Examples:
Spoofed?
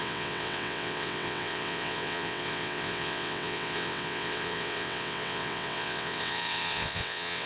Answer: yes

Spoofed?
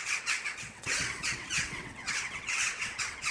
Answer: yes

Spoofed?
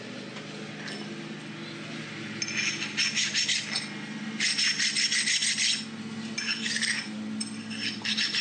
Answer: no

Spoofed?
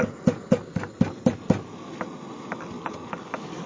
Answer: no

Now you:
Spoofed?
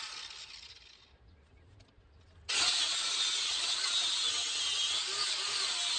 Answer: no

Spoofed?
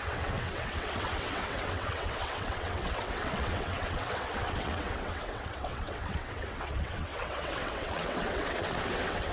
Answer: yes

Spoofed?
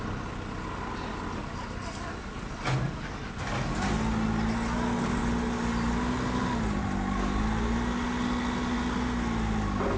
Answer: no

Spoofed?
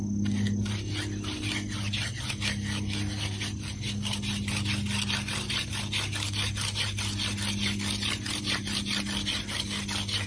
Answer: no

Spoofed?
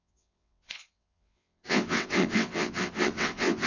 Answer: yes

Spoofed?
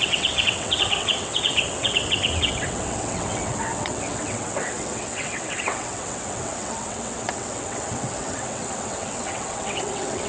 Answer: yes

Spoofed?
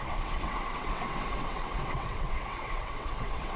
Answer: yes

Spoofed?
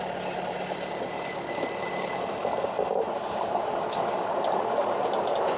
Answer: no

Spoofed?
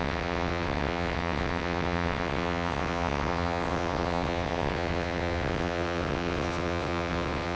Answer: yes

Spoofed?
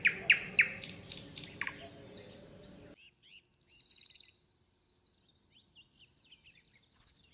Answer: no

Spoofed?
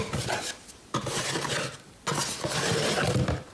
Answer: no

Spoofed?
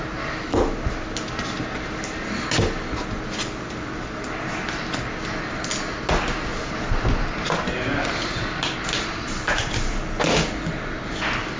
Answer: no